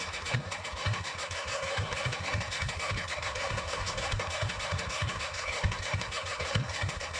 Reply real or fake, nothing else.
fake